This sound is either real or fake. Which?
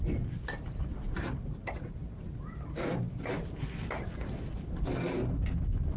real